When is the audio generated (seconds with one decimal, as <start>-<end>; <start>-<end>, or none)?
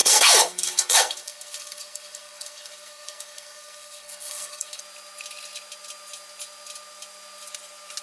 0.0-4.8